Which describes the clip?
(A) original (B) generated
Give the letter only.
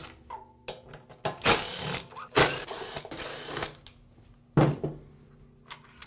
A